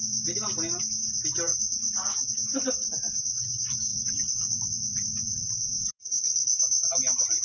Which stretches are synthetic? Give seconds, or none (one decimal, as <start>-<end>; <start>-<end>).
1.5-2.3; 3.9-6.0